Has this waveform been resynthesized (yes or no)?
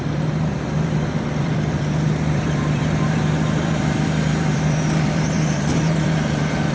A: yes